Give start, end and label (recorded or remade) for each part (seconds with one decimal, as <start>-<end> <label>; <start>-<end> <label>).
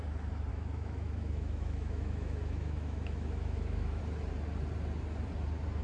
0.0-0.5 recorded; 0.5-4.0 remade; 4.0-5.8 recorded